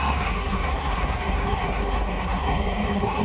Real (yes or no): no